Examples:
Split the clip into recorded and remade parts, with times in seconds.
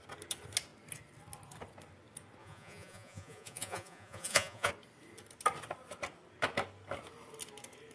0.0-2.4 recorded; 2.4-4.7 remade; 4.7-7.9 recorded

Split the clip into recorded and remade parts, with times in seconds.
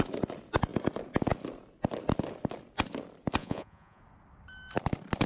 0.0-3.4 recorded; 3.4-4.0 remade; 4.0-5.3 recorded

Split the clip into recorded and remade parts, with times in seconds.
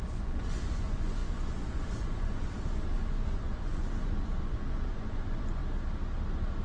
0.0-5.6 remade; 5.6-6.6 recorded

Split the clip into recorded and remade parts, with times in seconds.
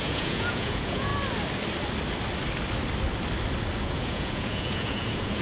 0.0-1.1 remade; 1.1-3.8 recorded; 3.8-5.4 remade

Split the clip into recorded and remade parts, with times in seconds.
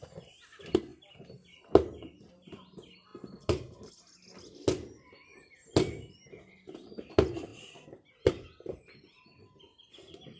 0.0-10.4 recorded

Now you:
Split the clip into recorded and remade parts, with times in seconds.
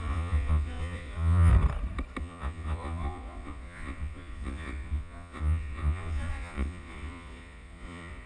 0.0-1.5 remade; 1.5-2.2 recorded; 2.2-8.3 remade